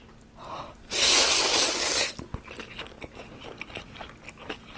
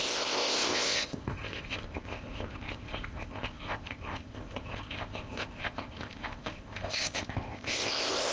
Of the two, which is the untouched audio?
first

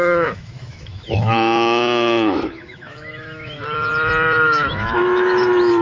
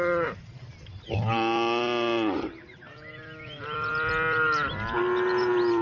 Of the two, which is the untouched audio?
second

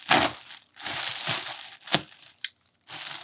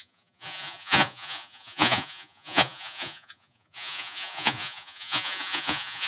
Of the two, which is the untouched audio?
first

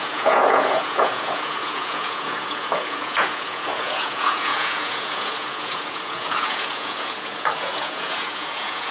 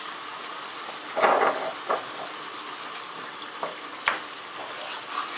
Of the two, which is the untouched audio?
second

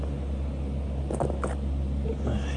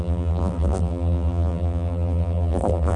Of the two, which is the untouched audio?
first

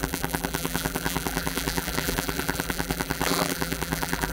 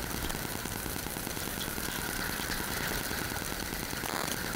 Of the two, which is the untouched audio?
second